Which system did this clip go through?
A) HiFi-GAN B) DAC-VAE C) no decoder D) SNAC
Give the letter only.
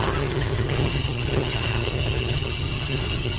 A